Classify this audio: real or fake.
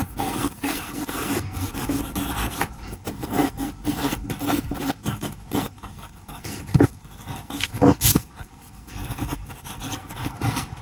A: fake